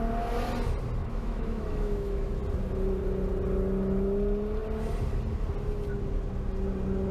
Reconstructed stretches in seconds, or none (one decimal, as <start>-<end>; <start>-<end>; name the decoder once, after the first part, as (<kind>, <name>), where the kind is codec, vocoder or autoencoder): 1.0-2.3 (autoencoder, DAC-VAE)